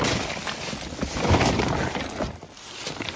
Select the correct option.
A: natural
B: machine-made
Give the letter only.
A